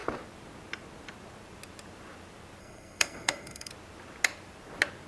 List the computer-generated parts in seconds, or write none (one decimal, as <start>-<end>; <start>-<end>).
2.6-3.7